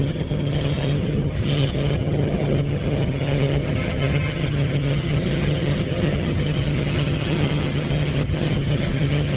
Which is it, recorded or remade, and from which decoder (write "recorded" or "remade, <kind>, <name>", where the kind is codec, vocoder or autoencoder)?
remade, vocoder, HiFi-GAN